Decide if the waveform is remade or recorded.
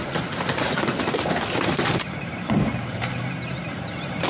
remade